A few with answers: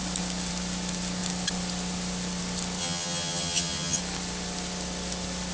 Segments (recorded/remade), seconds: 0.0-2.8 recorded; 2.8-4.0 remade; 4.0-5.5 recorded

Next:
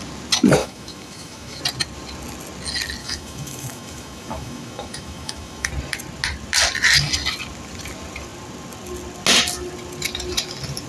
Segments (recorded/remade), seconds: 0.0-0.6 recorded; 0.6-1.6 remade; 1.6-3.0 recorded; 3.0-5.7 remade; 5.7-10.9 recorded

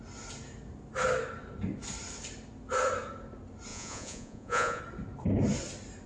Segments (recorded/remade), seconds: 0.0-3.7 recorded; 3.7-4.8 remade; 4.8-6.1 recorded

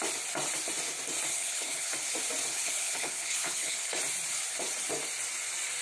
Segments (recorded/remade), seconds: 0.0-1.3 recorded; 1.3-1.9 remade; 1.9-2.5 recorded; 2.5-4.0 remade; 4.0-5.8 recorded

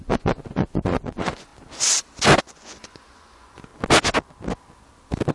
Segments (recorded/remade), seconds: 0.0-1.5 remade; 1.5-2.4 recorded; 2.4-3.7 remade; 3.7-5.3 recorded

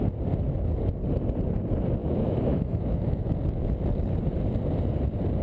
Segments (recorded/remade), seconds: 0.0-2.0 recorded; 2.0-3.3 remade; 3.3-5.4 recorded

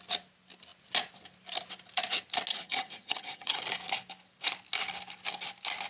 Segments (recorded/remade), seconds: 0.0-2.5 recorded; 2.5-3.6 remade; 3.6-5.9 recorded

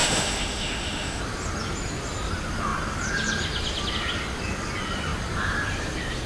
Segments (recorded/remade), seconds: 0.0-1.2 remade; 1.2-6.3 recorded